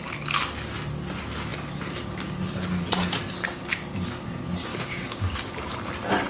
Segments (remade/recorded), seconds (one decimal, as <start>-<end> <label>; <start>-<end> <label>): 0.0-4.7 recorded; 4.7-5.5 remade; 5.5-6.3 recorded